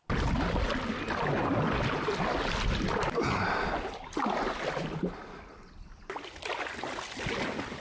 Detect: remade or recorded recorded